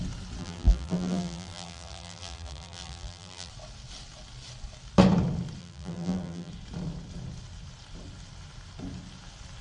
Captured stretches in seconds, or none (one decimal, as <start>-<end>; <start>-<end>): 0.0-0.4; 3.5-5.6; 6.5-9.6